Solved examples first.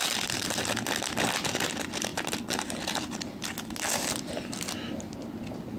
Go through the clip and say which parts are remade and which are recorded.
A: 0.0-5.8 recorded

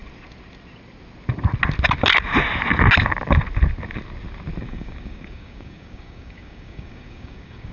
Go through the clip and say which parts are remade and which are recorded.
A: 0.0-4.6 recorded; 4.6-7.7 remade

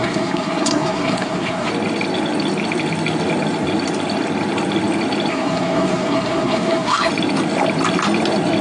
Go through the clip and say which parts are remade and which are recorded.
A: 0.0-1.7 remade; 1.7-5.3 recorded; 5.3-7.1 remade; 7.1-8.6 recorded

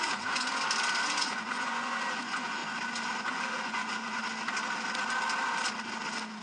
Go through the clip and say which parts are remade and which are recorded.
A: 0.0-0.5 remade; 0.5-1.1 recorded; 1.1-2.6 remade; 2.6-3.2 recorded; 3.2-4.2 remade; 4.2-6.4 recorded